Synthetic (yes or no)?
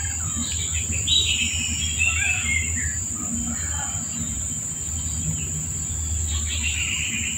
no